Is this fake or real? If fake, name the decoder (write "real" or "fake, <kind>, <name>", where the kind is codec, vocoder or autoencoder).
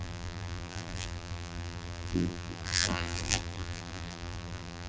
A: fake, vocoder, BigVGAN v2